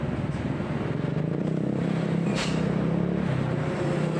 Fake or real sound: real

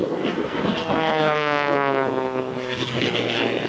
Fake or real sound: fake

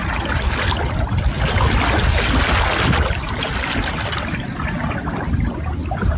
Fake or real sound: real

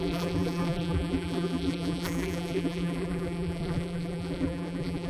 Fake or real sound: fake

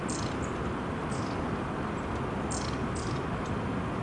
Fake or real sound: real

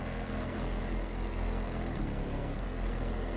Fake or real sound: fake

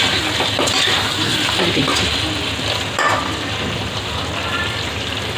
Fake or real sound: real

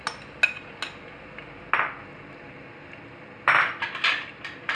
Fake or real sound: real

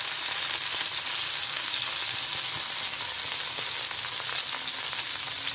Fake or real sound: real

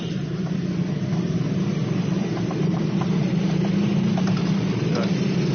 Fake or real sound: fake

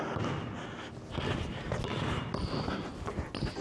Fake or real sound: real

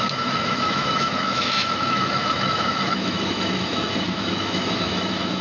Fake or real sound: fake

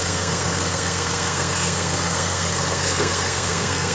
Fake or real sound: fake